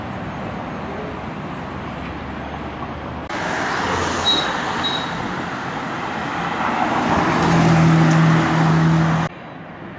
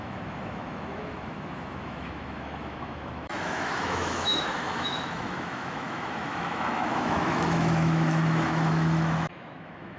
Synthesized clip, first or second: second